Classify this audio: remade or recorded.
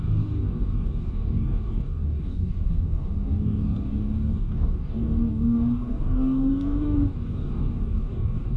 remade